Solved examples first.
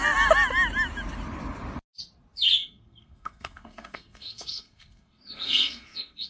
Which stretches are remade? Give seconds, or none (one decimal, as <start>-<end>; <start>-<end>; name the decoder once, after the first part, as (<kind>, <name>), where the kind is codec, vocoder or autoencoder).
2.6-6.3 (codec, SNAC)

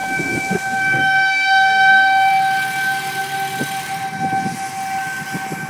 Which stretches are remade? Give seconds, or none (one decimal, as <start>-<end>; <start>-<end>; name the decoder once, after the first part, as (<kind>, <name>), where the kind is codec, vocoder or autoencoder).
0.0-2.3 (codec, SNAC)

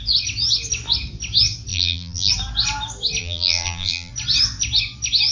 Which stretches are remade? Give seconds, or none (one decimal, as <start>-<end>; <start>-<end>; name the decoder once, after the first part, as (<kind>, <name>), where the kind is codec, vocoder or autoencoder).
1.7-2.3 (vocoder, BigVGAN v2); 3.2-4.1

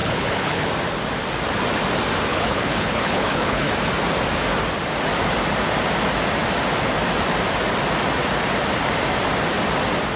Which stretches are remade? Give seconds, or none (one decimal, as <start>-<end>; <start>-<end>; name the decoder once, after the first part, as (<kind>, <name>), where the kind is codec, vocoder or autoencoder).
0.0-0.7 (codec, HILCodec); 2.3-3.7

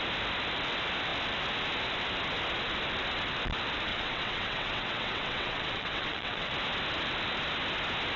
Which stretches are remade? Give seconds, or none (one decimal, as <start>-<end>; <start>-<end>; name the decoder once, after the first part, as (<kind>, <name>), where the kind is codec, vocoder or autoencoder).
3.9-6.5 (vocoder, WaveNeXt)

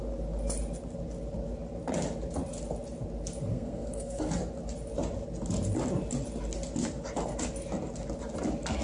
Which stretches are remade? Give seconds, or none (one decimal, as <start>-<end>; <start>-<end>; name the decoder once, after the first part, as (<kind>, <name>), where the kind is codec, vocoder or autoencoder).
3.5-4.2 (codec, SNAC)

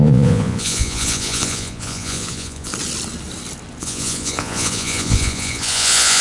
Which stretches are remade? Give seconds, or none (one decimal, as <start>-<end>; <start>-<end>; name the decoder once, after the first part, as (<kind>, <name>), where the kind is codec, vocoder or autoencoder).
0.0-2.7 (vocoder, Vocos); 3.8-6.2